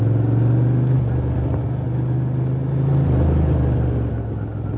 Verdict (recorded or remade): recorded